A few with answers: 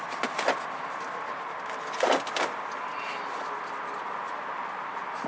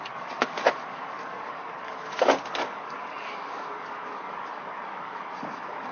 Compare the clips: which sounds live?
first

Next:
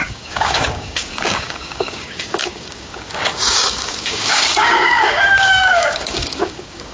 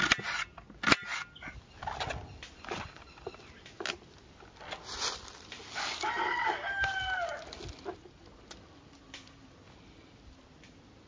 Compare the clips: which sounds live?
second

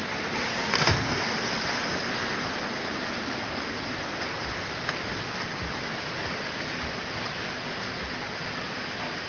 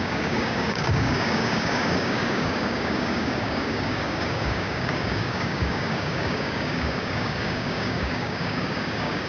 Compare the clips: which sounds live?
first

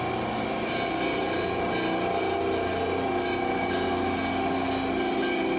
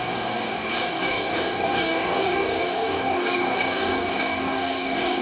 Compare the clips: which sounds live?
first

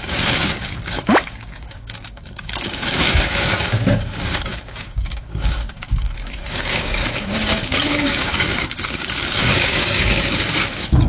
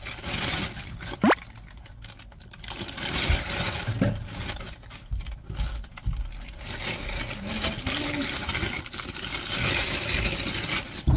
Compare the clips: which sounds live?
second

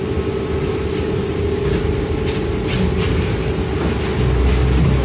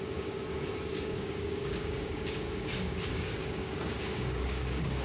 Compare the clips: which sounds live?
first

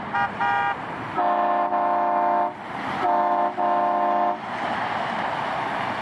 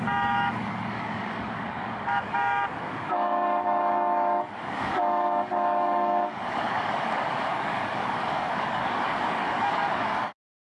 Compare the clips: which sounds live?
first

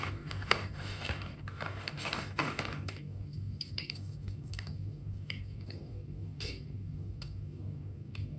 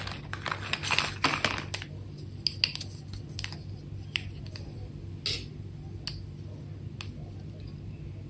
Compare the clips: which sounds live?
second